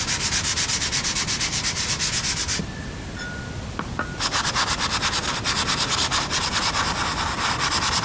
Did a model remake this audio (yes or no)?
no